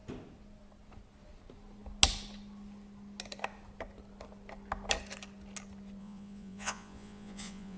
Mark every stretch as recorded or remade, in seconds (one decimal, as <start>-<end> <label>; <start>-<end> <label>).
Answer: 0.0-6.0 recorded; 6.0-7.8 remade